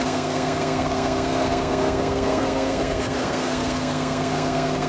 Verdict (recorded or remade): remade